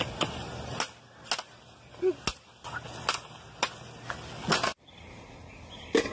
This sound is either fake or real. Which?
real